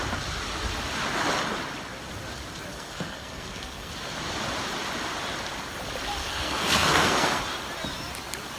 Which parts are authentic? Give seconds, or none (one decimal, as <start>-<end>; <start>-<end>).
0.0-2.7; 3.9-6.2; 7.4-8.6